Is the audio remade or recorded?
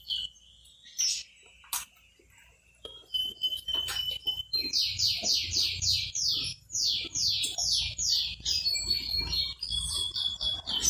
recorded